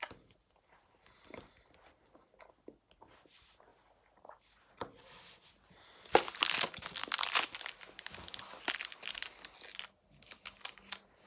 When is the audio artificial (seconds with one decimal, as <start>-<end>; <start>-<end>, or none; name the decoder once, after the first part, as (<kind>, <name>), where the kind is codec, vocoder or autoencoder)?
none

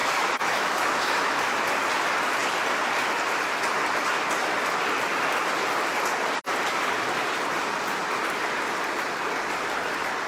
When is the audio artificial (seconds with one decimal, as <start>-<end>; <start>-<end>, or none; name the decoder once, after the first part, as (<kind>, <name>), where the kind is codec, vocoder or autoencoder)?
0.0-1.4 (autoencoder, DAC-VAE)

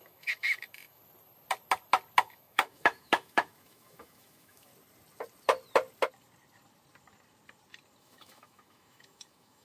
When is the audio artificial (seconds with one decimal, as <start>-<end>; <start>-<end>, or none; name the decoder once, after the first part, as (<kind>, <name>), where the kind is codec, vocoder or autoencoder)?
0.0-1.0 (autoencoder, DAC-VAE); 2.2-4.7; 8.0-9.6

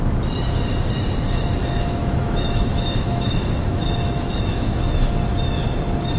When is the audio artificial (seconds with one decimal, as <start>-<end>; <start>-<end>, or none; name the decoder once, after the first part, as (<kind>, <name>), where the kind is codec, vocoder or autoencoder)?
1.6-5.3 (autoencoder, DAC-VAE)